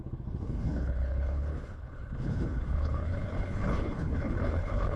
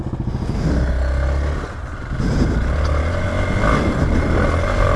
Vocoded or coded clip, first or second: first